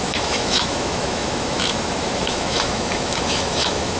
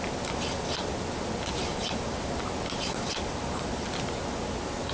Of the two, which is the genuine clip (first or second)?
second